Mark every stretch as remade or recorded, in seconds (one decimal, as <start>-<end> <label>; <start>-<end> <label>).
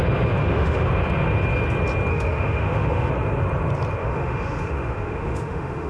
0.0-0.4 recorded; 0.4-0.9 remade; 0.9-2.1 recorded; 2.1-3.1 remade; 3.1-4.0 recorded; 4.0-5.9 remade